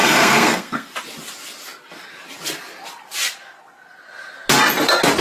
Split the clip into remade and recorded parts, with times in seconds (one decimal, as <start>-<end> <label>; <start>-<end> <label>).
0.0-0.9 remade; 0.9-5.2 recorded